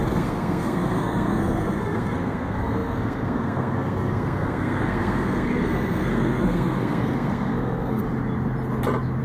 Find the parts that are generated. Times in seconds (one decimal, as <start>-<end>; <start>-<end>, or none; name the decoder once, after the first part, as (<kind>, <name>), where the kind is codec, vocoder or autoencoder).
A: 0.0-8.0 (codec, SNAC)